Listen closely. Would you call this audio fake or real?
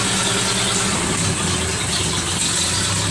real